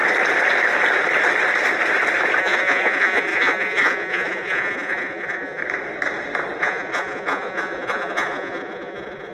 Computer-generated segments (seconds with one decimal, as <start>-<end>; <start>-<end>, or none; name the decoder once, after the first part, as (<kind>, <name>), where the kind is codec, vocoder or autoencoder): 2.4-5.6 (vocoder, Vocos); 6.6-9.3

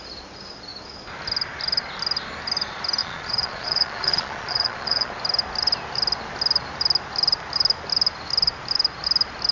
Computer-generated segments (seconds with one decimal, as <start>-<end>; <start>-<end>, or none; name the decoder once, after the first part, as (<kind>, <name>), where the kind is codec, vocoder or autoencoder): 3.0-5.1 (vocoder, Vocos)

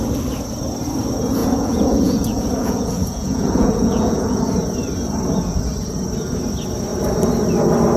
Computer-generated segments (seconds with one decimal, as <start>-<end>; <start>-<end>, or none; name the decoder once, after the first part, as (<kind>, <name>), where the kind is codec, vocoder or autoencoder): 1.4-4.4 (vocoder, Vocos)

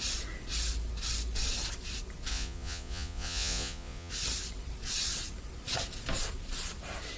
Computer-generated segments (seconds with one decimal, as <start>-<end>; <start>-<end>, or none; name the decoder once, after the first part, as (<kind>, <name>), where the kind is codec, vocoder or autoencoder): 2.3-4.1 (vocoder, Vocos)